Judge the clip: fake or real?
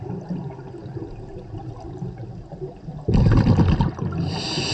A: real